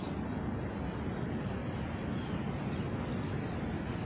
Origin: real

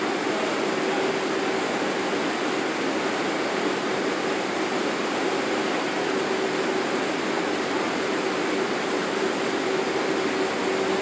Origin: real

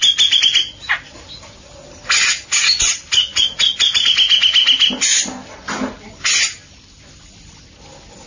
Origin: real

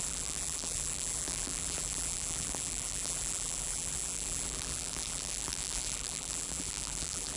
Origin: fake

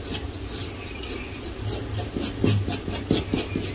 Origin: real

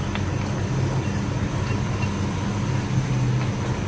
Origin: real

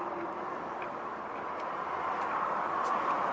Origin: real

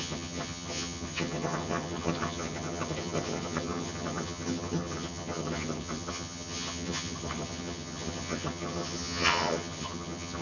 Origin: fake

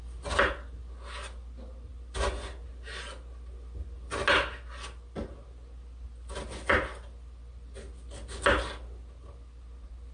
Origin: real